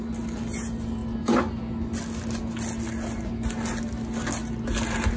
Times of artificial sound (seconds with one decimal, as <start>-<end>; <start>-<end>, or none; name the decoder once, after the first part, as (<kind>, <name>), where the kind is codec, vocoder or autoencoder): none